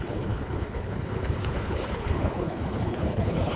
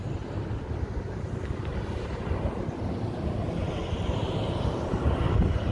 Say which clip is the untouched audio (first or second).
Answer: second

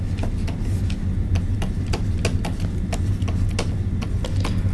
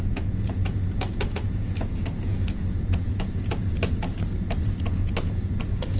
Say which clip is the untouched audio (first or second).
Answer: first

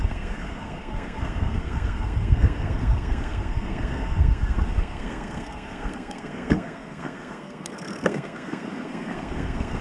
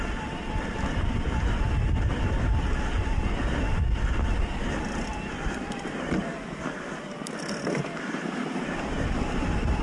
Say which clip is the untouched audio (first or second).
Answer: second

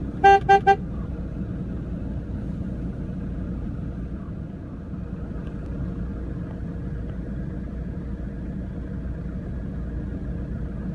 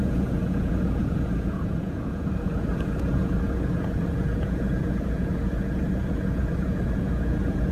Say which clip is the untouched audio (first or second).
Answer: first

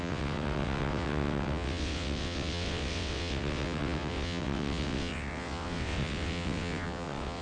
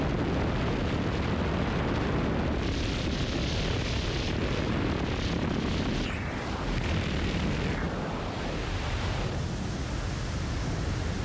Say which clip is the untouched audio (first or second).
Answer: second